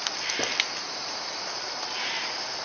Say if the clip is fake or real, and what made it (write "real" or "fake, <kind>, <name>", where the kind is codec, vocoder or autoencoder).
fake, vocoder, BigVGAN v2